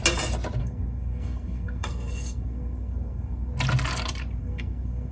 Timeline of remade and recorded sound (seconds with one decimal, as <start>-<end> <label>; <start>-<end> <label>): 0.0-0.6 recorded; 0.6-3.5 remade; 3.5-4.4 recorded; 4.4-5.1 remade